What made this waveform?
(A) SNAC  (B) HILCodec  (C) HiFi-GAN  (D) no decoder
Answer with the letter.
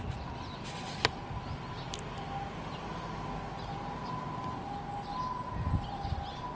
D